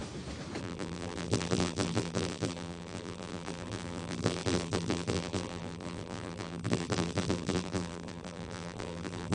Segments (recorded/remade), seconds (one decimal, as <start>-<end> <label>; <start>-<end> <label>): 0.0-0.6 recorded; 0.6-9.3 remade